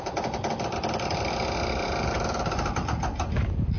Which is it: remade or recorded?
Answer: recorded